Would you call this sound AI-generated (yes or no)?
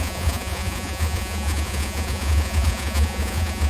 yes